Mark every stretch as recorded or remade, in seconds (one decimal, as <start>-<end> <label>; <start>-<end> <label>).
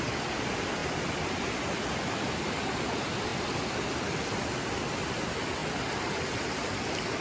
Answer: 0.0-7.2 recorded